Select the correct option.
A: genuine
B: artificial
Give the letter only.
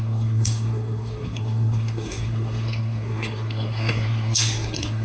B